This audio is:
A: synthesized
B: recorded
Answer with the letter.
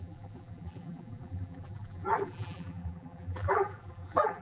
A